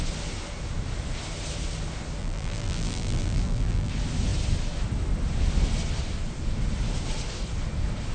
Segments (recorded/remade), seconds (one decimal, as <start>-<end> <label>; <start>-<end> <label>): 0.0-2.2 recorded; 2.2-3.9 remade; 3.9-8.1 recorded